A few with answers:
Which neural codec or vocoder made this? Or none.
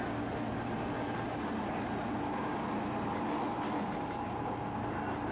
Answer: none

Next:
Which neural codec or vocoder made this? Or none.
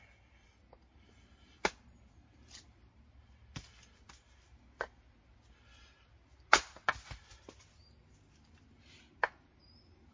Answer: none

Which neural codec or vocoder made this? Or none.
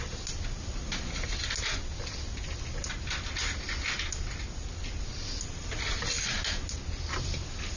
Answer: none